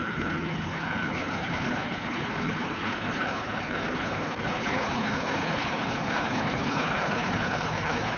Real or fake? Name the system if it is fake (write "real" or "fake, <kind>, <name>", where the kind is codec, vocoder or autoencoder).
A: fake, codec, HILCodec